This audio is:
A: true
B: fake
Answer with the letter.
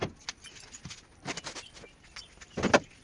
A